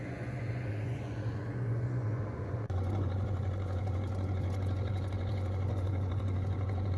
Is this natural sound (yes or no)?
no